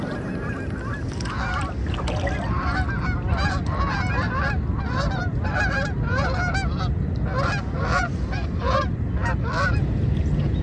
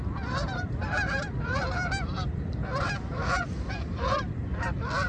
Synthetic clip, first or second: second